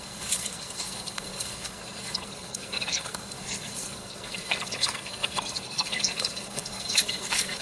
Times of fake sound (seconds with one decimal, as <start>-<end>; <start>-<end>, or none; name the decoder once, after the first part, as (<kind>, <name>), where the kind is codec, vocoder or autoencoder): 0.0-7.6 (codec, SNAC)